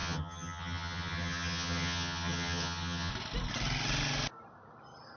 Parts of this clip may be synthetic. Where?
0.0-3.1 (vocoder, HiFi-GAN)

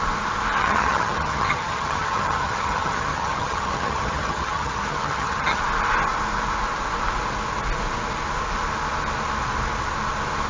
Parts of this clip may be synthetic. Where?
0.6-5.6 (vocoder, HiFi-GAN)

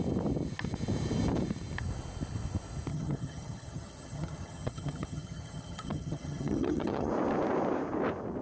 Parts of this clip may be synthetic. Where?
2.9-7.1 (vocoder, HiFi-GAN)

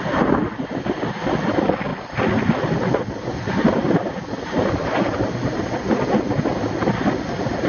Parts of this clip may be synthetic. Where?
none

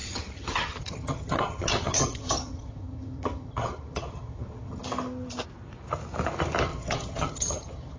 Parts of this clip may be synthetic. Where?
0.0-4.8 (vocoder, HiFi-GAN); 6.7-8.0

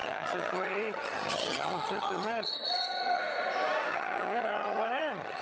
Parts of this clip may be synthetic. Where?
0.0-3.2 (vocoder, HiFi-GAN); 3.9-5.4